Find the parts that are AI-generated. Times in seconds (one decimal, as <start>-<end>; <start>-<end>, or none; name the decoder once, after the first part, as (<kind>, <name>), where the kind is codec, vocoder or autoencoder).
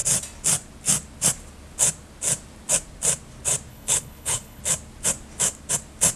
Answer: 3.7-4.6 (codec, HILCodec)